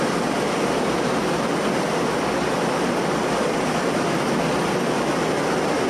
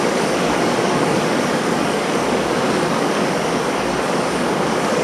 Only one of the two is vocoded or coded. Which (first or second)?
second